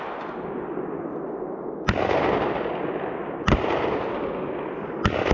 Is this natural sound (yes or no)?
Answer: yes